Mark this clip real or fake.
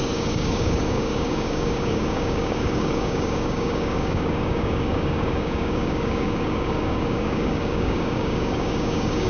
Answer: fake